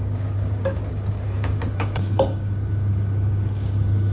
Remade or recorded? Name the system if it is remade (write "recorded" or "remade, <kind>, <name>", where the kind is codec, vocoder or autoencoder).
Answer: remade, codec, DAC